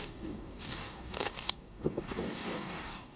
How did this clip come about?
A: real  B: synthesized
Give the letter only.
B